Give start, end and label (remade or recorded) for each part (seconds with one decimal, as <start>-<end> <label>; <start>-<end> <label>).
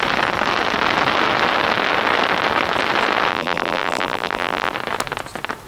0.0-3.3 recorded; 3.3-4.7 remade; 4.7-5.7 recorded